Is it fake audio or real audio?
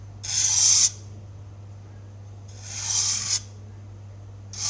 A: real